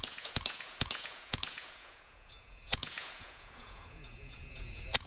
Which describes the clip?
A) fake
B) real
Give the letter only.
A